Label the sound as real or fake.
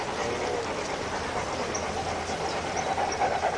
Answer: real